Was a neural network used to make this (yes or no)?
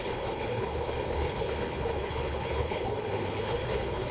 yes